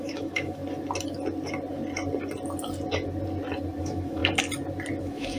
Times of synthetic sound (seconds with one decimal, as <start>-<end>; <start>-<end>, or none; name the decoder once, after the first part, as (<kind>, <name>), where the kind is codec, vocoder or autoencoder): 0.0-0.6 (autoencoder, DAC-VAE); 3.8-4.2; 5.0-5.4